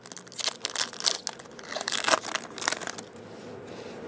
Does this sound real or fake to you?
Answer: real